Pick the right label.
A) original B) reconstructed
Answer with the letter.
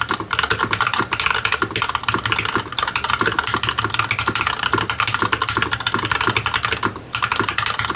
A